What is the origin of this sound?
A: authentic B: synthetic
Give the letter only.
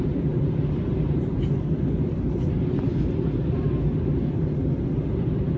A